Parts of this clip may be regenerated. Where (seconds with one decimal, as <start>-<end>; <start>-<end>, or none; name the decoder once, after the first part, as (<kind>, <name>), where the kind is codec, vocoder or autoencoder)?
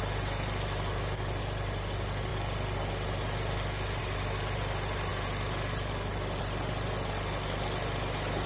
none